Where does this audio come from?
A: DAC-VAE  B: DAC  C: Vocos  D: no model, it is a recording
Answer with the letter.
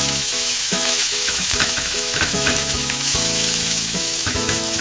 A